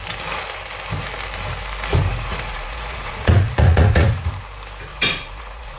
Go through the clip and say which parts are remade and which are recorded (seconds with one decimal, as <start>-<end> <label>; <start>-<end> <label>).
0.0-2.1 recorded; 2.1-4.3 remade; 4.3-4.9 recorded; 4.9-5.8 remade

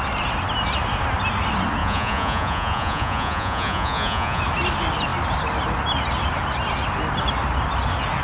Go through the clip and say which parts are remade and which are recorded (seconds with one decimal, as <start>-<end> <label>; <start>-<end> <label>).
0.0-1.8 recorded; 1.8-4.4 remade; 4.4-8.2 recorded

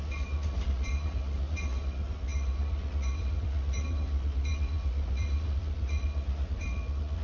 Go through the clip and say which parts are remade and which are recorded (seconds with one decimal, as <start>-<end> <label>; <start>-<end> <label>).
0.0-7.2 remade

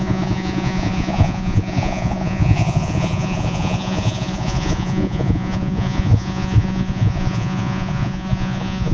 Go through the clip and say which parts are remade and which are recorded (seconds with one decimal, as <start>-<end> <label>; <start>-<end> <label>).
0.0-8.9 remade

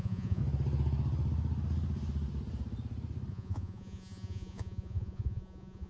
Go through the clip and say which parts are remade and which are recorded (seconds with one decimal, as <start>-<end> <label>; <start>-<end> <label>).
0.0-0.4 remade; 0.4-3.3 recorded; 3.3-5.9 remade

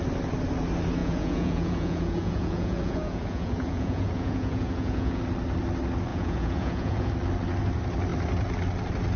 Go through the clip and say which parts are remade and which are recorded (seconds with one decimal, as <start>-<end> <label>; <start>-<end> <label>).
0.0-1.0 recorded; 1.0-5.2 remade; 5.2-6.1 recorded; 6.1-7.1 remade; 7.1-9.2 recorded

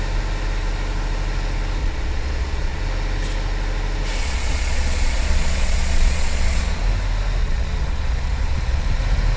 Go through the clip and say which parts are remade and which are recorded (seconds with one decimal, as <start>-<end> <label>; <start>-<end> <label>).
0.0-1.8 recorded; 1.8-2.8 remade; 2.8-4.2 recorded; 4.2-6.8 remade; 6.8-7.4 recorded; 7.4-9.0 remade; 9.0-9.4 recorded

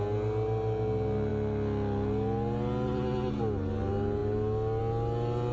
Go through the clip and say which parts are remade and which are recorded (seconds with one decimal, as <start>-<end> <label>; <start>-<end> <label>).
0.0-5.5 recorded